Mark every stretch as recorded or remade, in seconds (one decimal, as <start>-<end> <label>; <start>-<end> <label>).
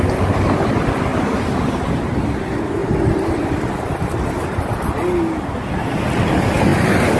0.0-7.2 recorded